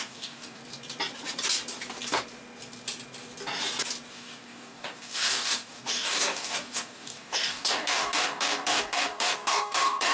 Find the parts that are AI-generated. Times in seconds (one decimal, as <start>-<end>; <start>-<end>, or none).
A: 0.0-0.6; 4.1-10.1

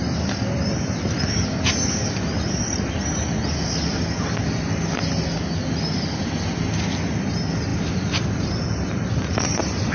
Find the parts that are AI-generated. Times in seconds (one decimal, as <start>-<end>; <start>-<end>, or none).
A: 0.0-3.0; 7.7-9.9

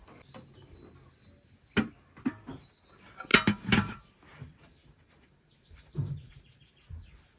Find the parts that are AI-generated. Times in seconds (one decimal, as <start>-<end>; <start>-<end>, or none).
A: 3.3-6.3

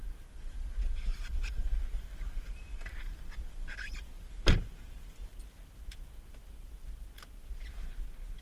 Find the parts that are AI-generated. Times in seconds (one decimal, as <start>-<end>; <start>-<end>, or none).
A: 1.1-1.7; 2.7-3.5

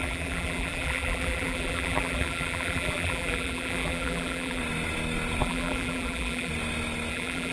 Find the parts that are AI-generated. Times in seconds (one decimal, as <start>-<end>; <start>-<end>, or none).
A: 0.0-4.6; 5.4-6.5; 7.1-7.5

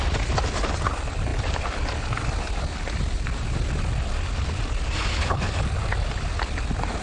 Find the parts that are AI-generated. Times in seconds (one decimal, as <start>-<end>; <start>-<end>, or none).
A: 5.1-5.6